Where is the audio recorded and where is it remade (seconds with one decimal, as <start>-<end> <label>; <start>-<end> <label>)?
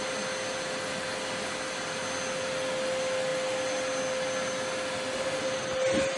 0.0-6.2 recorded